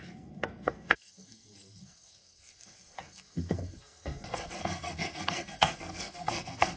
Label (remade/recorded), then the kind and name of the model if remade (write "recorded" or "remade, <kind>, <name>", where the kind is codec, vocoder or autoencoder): remade, codec, SNAC